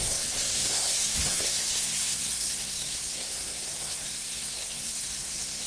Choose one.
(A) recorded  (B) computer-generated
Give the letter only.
B